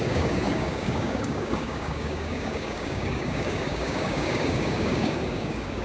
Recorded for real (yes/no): no